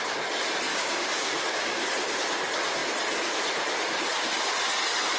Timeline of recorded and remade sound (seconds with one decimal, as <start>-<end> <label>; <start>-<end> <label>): 0.0-0.7 recorded; 0.7-1.9 remade; 1.9-5.2 recorded